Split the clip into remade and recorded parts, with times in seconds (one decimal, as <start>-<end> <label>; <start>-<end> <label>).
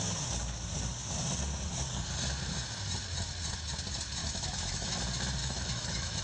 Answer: 0.0-4.2 recorded; 4.2-5.0 remade; 5.0-5.4 recorded; 5.4-6.2 remade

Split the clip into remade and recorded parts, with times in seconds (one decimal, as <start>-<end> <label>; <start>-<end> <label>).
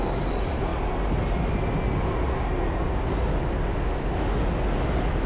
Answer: 0.0-3.7 recorded; 3.7-4.4 remade; 4.4-5.3 recorded